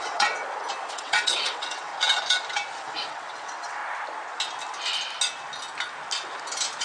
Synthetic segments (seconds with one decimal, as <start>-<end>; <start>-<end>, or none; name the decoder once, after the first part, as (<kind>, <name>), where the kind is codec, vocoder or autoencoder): 0.0-0.4 (vocoder, WaveNeXt); 0.9-1.9; 2.8-3.8